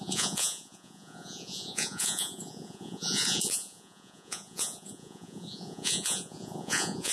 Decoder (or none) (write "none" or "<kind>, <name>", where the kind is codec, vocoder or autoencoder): vocoder, Vocos